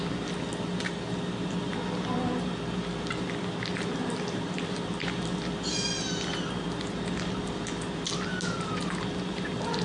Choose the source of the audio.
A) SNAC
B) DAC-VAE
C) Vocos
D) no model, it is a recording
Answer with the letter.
D